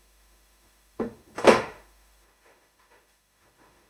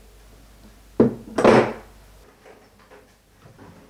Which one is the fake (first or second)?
first